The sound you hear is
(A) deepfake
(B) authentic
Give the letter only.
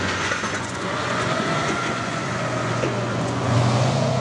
A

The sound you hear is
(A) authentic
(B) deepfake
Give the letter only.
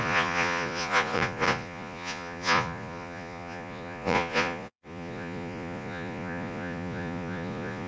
B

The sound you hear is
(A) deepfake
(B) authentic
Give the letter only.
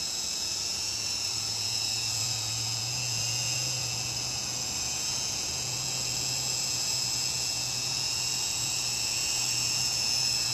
A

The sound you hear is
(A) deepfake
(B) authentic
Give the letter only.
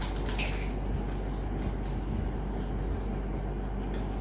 B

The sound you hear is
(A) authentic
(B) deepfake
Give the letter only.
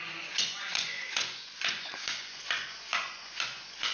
B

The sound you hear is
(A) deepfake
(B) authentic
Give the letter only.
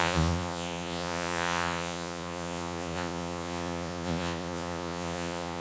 A